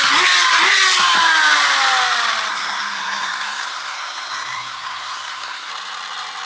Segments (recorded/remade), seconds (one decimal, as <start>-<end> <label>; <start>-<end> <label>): 0.0-2.5 recorded; 2.5-5.7 remade; 5.7-6.5 recorded